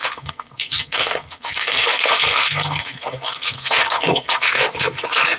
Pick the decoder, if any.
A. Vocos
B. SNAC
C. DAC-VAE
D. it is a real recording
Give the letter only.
B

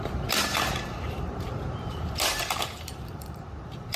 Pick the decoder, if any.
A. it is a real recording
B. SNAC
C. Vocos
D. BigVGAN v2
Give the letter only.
D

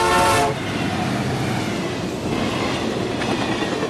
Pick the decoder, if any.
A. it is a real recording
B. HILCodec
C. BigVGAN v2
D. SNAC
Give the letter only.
A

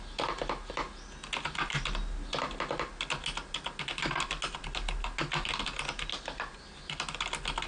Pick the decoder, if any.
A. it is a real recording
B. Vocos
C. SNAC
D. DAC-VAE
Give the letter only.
A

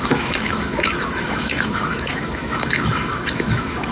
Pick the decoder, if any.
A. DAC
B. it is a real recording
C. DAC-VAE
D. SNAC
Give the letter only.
C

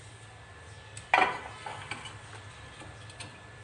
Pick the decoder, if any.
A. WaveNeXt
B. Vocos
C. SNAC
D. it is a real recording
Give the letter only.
D